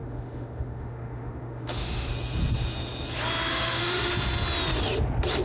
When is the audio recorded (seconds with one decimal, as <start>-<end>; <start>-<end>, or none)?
2.1-3.5; 4.1-5.4